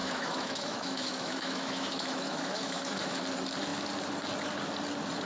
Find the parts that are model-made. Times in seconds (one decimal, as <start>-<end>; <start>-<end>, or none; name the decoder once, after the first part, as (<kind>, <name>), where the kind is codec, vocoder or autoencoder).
0.0-3.2 (autoencoder, DAC-VAE)